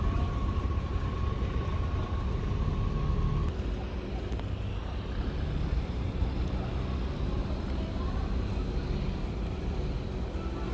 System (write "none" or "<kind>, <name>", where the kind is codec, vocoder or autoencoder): none